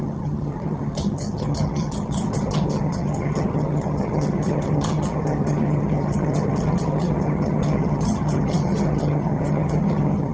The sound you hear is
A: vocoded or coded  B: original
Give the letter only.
A